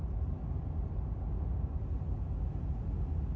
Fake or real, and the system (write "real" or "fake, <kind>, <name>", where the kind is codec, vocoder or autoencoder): real